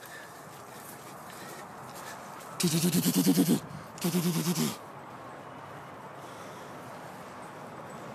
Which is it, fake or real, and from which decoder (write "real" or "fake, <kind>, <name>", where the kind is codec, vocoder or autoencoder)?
real